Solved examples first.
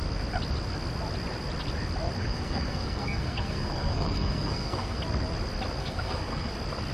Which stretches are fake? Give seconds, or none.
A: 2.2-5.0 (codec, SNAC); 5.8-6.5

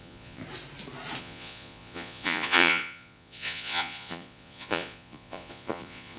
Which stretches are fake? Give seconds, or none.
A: 0.0-0.4 (vocoder, Vocos); 1.2-6.2

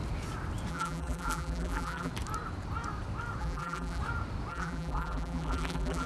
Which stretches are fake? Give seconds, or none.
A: 0.7-2.1 (vocoder, BigVGAN v2); 3.4-4.0; 4.5-6.1

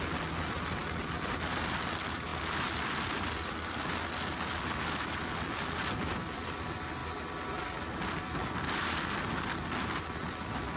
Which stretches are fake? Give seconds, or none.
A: none

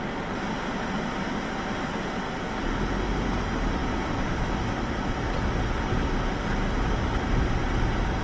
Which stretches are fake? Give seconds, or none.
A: none

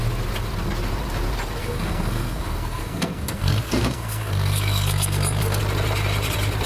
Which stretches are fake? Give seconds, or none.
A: 1.6-5.6 (codec, SNAC)